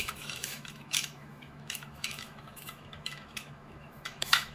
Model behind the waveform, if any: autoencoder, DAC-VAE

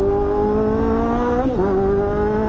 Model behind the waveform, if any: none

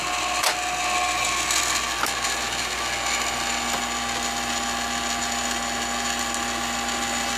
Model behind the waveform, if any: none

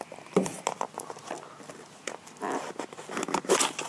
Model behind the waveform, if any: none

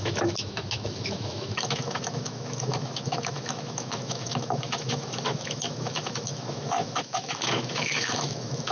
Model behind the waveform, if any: autoencoder, DAC-VAE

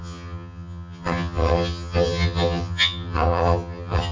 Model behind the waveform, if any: vocoder, HiFi-GAN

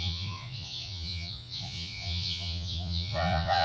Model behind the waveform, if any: vocoder, Vocos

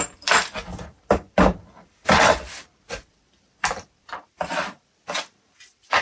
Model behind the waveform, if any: vocoder, BigVGAN v2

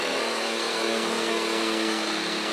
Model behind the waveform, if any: codec, SNAC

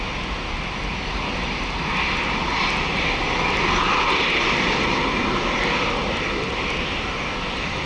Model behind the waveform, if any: none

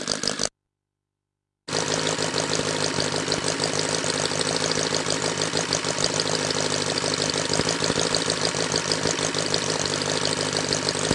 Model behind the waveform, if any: none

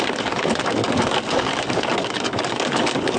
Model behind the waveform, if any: codec, DAC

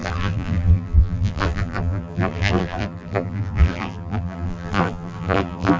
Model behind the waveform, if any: vocoder, BigVGAN v2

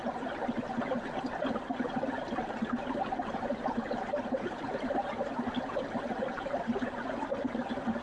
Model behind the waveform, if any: none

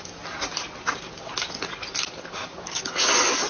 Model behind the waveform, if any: none